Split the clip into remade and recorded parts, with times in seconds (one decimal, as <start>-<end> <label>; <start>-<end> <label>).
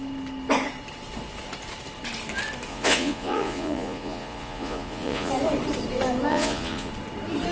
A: 0.0-2.7 recorded; 2.7-5.3 remade; 5.3-6.3 recorded; 6.3-6.9 remade; 6.9-7.5 recorded